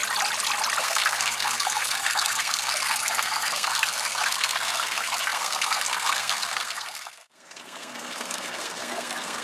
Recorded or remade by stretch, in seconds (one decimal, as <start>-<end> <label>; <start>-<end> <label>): 0.0-0.8 recorded; 0.8-9.4 remade